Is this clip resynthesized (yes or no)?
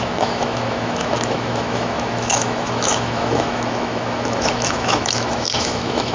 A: yes